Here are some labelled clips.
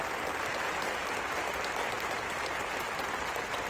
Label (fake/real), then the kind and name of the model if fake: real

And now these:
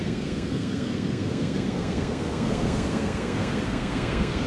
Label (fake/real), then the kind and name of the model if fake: fake, codec, SNAC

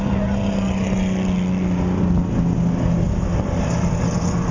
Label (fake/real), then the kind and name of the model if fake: real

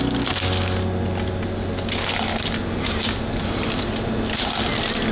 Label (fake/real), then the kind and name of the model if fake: real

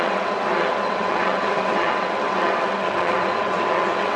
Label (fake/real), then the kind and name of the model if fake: fake, vocoder, WaveNeXt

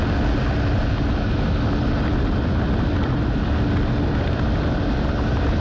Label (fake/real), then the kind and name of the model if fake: real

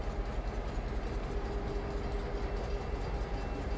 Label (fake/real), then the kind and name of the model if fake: real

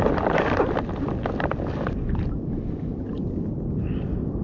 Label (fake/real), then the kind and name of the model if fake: real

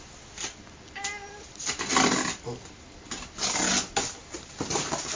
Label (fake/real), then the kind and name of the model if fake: real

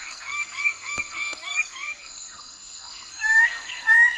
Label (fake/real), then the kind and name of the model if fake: fake, codec, SNAC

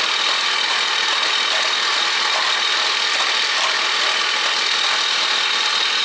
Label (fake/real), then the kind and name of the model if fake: real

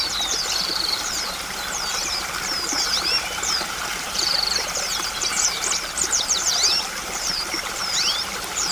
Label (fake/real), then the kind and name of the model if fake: fake, vocoder, BigVGAN v2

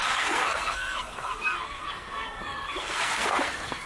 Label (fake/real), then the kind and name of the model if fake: fake, codec, SNAC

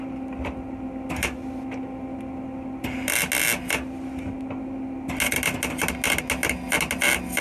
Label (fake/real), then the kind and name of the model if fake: real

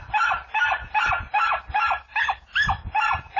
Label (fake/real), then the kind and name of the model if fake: real